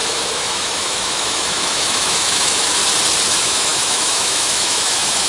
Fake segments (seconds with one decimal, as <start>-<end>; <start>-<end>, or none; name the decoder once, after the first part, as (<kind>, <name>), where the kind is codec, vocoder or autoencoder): 0.0-2.8 (autoencoder, DAC-VAE); 3.3-5.3